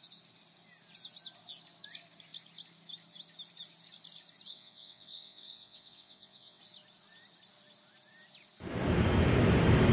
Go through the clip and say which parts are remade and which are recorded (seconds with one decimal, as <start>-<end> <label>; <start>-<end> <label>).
0.0-4.5 recorded; 4.5-6.6 remade; 6.6-9.9 recorded